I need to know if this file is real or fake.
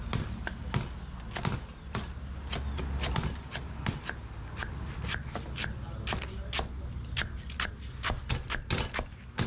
real